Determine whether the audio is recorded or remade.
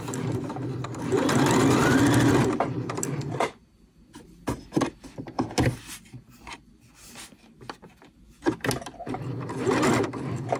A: recorded